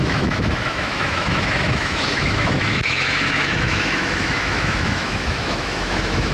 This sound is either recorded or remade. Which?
remade